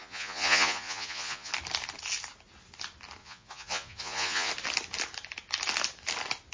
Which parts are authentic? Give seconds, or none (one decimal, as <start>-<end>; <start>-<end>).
1.5-3.2; 4.5-6.5